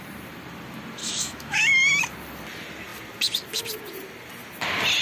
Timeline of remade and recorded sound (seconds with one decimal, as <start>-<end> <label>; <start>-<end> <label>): 0.0-1.0 recorded; 1.0-2.0 remade; 2.0-5.0 recorded